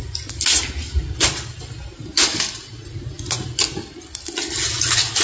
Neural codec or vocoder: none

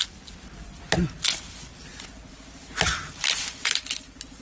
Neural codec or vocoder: none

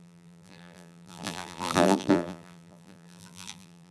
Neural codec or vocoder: vocoder, BigVGAN v2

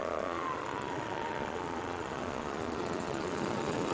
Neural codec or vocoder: vocoder, Vocos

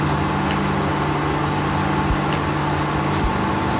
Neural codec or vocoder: none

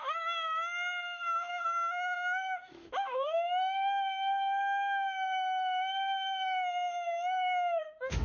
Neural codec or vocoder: autoencoder, DAC-VAE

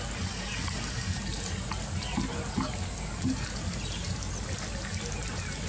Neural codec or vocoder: none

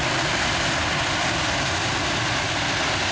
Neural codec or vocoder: none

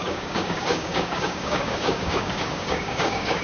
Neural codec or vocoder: codec, DAC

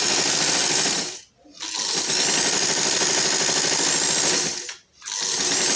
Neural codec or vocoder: none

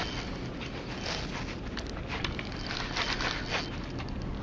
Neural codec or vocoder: none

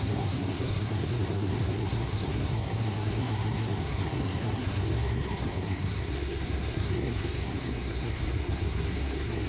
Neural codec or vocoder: codec, SNAC